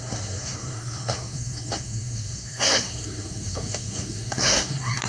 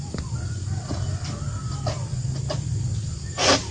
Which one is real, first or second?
second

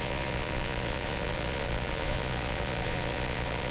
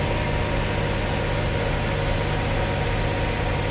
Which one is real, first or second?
second